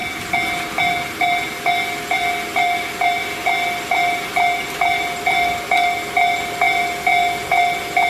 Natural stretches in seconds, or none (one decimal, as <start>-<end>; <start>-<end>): 0.0-8.1